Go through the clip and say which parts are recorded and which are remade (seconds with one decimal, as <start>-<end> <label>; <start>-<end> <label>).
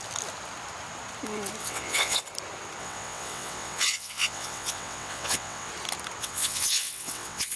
0.0-1.6 recorded; 1.6-2.2 remade; 2.2-2.8 recorded; 2.8-5.7 remade; 5.7-6.2 recorded; 6.2-7.6 remade